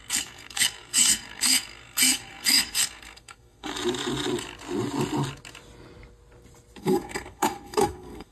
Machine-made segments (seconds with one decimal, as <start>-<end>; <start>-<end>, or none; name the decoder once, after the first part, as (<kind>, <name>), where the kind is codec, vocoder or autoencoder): 0.0-3.7 (codec, SNAC); 6.8-8.3